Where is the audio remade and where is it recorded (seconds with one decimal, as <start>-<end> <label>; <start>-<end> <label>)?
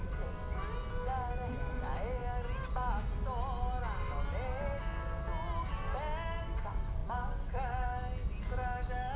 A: 0.0-9.2 recorded